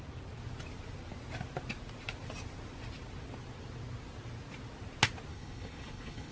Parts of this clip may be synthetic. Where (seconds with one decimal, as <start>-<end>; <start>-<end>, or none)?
5.3-6.3